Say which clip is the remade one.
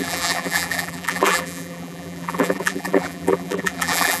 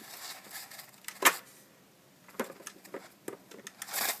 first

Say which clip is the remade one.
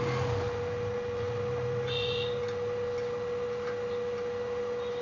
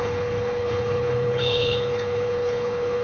second